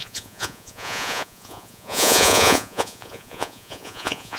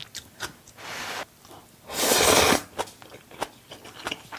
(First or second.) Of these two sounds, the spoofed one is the first